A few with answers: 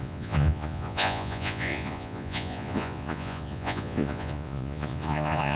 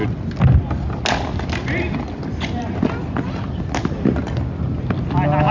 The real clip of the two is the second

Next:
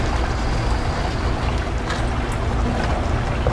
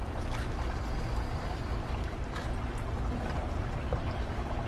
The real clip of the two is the first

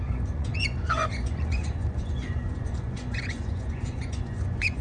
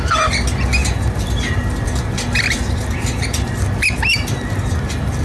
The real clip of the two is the second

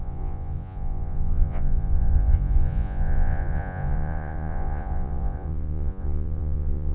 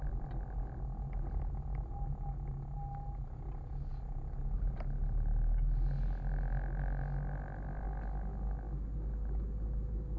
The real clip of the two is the second